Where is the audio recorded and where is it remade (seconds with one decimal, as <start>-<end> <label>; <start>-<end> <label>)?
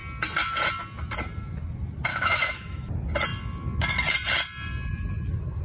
0.0-2.1 recorded; 2.1-2.9 remade; 2.9-5.6 recorded